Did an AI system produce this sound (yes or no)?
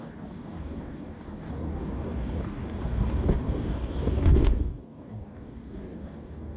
yes